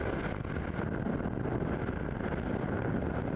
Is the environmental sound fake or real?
real